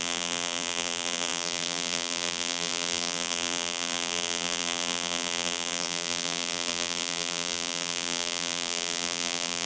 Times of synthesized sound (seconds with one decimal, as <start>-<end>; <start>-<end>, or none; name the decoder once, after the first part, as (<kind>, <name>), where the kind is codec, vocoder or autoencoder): 0.0-9.7 (vocoder, BigVGAN v2)